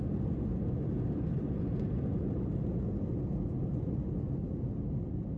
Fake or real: real